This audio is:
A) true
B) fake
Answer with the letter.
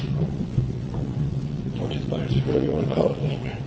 B